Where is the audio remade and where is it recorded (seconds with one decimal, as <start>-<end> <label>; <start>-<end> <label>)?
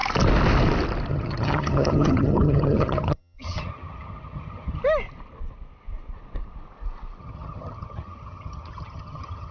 0.0-1.1 recorded; 1.1-4.8 remade; 4.8-7.2 recorded; 7.2-9.5 remade